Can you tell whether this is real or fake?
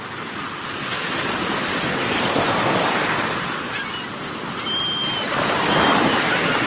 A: real